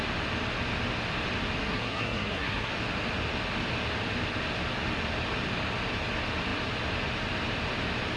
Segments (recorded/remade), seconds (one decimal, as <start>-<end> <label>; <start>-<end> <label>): 0.0-1.6 recorded; 1.6-2.7 remade; 2.7-8.2 recorded